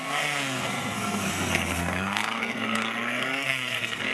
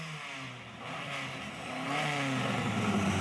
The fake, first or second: first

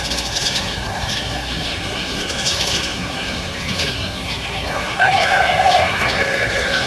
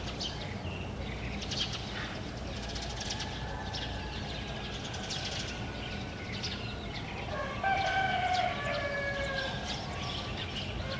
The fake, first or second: first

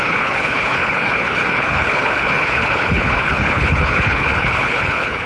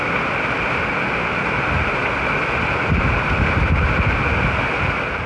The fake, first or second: first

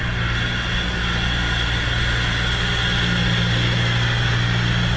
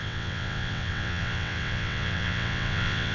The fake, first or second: second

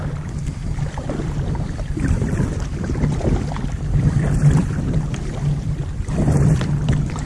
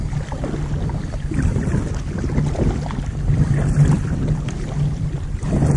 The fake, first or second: first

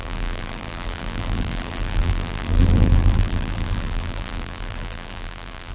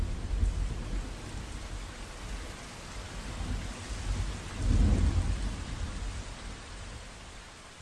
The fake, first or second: first